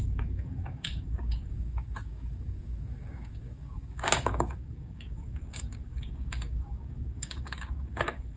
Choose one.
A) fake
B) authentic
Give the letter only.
A